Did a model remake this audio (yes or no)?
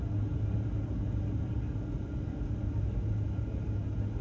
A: no